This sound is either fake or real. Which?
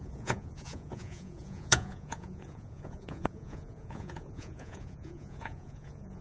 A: fake